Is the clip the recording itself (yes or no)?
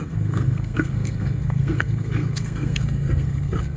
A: no